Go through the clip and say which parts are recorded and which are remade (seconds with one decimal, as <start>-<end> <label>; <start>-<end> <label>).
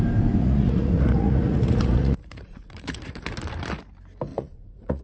0.0-0.4 recorded; 0.4-3.2 remade; 3.2-4.3 recorded; 4.3-5.0 remade